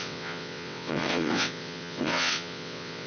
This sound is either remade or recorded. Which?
remade